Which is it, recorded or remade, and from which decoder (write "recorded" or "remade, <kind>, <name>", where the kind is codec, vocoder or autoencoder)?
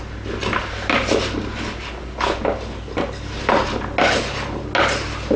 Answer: recorded